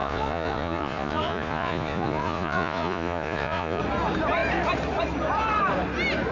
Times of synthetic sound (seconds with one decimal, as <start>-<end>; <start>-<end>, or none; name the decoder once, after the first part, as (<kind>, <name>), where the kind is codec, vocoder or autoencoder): 0.0-3.8 (vocoder, Vocos)